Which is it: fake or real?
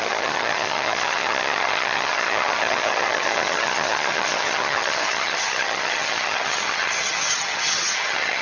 fake